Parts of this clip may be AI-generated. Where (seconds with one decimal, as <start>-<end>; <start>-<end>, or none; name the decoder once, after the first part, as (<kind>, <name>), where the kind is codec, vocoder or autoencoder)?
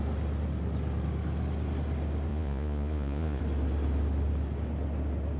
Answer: 2.3-3.4 (vocoder, Vocos)